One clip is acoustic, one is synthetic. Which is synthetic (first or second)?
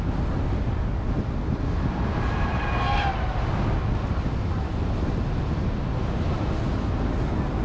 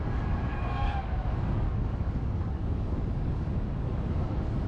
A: second